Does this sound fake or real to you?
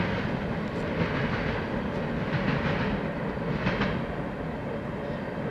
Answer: real